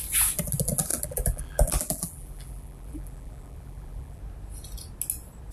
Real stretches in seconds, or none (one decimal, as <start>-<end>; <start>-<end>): 0.0-0.9; 4.2-5.5